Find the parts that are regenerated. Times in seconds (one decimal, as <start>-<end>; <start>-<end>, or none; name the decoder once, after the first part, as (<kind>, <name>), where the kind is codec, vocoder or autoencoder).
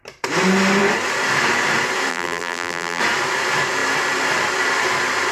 2.1-3.0 (vocoder, BigVGAN v2)